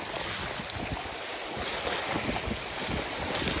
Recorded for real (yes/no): yes